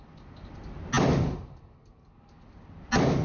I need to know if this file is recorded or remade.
recorded